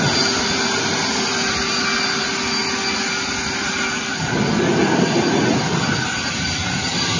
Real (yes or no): yes